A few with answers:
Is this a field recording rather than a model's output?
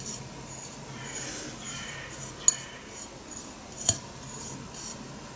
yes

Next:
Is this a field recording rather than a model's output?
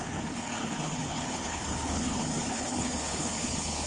no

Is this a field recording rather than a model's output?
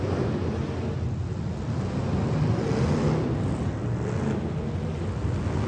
yes